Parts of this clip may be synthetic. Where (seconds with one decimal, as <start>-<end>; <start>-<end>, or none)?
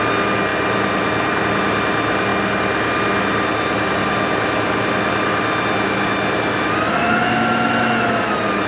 none